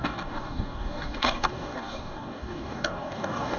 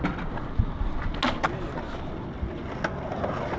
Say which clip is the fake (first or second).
first